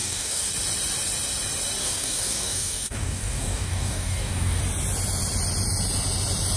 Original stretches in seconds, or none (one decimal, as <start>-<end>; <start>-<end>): 0.5-1.8; 4.6-6.6